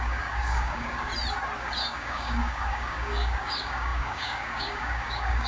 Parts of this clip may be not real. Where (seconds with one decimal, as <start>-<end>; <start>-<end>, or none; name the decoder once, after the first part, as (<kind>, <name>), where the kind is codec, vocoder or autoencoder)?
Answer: 0.0-1.1 (codec, DAC); 1.6-5.5